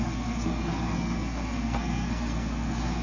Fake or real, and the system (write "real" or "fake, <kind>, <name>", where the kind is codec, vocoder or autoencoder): fake, codec, SNAC